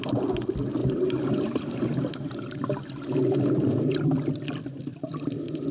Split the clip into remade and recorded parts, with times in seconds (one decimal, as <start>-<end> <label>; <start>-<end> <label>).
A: 0.0-0.8 recorded; 0.8-4.2 remade; 4.2-4.9 recorded; 4.9-5.7 remade

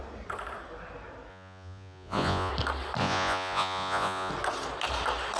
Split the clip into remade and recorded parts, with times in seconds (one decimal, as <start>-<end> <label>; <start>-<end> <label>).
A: 0.0-1.3 recorded; 1.3-2.5 remade; 2.5-3.0 recorded; 3.0-4.3 remade; 4.3-5.4 recorded

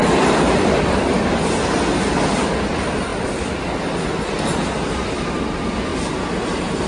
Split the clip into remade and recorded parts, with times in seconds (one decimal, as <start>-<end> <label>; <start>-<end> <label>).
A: 0.0-1.0 remade; 1.0-6.9 recorded

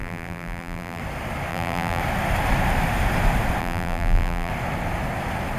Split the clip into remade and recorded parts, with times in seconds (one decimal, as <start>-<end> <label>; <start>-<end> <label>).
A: 0.0-1.0 remade; 1.0-1.5 recorded; 1.5-2.0 remade; 2.0-3.6 recorded; 3.6-4.5 remade; 4.5-5.6 recorded

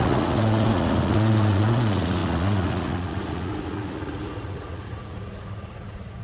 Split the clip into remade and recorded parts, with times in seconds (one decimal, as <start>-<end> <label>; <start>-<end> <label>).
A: 0.0-6.2 remade

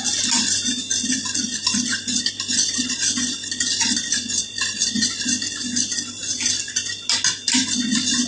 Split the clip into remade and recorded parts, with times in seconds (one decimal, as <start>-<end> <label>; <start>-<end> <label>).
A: 0.0-8.3 recorded

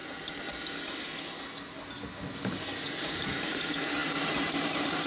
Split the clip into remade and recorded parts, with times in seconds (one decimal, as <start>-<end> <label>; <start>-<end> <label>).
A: 0.0-3.0 recorded; 3.0-5.1 remade